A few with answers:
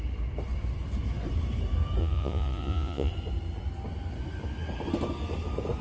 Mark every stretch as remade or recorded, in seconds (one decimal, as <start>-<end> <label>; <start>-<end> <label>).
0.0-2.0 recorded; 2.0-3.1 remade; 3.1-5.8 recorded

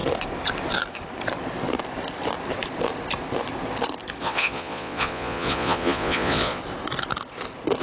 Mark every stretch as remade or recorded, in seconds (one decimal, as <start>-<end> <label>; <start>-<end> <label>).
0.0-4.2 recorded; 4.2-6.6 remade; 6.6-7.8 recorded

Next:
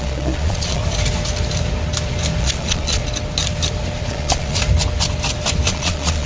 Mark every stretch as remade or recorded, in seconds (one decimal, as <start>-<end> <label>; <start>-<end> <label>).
0.0-0.8 remade; 0.8-2.4 recorded; 2.4-3.0 remade; 3.0-4.1 recorded; 4.1-4.6 remade; 4.6-5.7 recorded; 5.7-6.3 remade

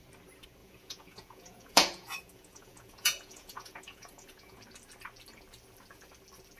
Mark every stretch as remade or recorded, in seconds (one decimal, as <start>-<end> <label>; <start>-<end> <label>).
0.0-0.6 recorded; 0.6-4.6 remade; 4.6-6.6 recorded

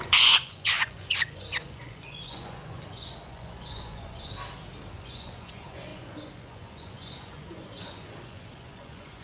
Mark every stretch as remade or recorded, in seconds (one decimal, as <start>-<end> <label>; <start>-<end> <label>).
0.0-4.3 remade; 4.3-4.9 recorded; 4.9-9.2 remade